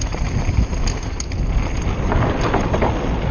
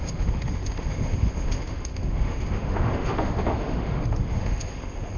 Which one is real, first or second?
first